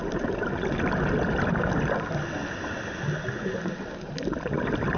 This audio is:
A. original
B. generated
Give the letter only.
A